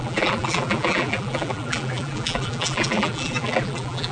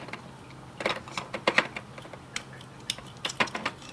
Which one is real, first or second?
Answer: second